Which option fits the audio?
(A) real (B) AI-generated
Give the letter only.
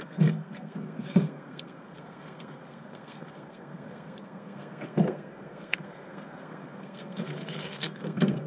B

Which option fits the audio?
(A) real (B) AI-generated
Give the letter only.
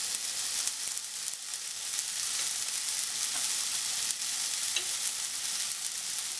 A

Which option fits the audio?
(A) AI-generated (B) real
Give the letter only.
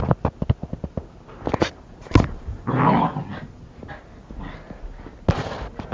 B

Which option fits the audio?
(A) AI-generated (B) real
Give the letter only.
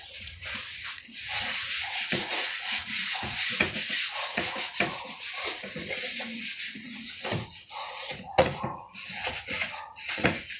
A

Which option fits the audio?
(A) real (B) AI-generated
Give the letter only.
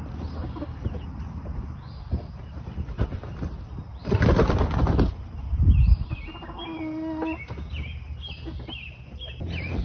A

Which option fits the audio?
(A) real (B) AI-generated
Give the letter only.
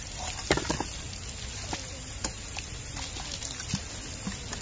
A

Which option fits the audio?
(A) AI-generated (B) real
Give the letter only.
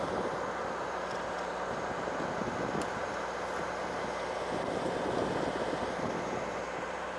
B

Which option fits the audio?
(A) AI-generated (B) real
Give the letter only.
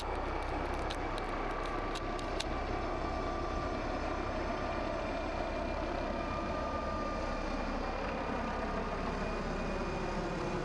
B